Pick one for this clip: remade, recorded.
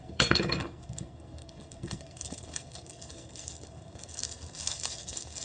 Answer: remade